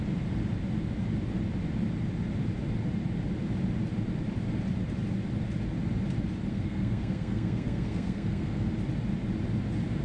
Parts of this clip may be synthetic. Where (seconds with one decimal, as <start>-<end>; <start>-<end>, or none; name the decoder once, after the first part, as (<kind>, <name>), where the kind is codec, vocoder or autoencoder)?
6.5-8.7 (codec, SNAC)